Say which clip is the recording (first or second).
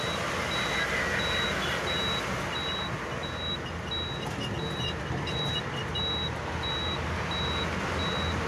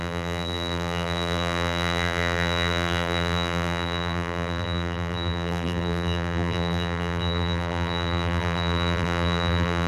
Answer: first